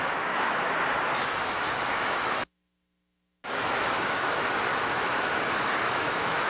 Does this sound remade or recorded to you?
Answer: remade